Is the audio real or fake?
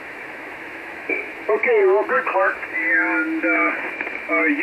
fake